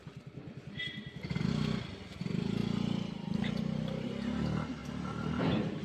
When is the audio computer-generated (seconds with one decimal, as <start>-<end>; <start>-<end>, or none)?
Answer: none